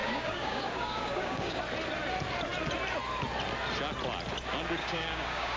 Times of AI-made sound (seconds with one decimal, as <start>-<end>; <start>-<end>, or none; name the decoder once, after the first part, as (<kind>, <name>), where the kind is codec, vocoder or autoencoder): 0.0-1.6 (codec, DAC); 4.8-5.6